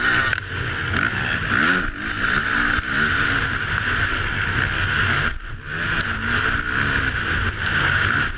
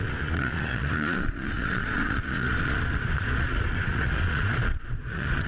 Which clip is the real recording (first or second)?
first